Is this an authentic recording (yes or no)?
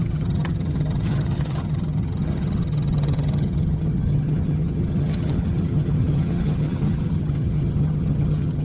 no